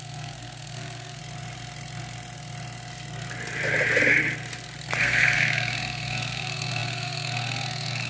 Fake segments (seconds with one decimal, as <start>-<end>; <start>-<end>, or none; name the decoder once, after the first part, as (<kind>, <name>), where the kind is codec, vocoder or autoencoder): 0.0-1.2 (codec, SNAC); 5.0-8.1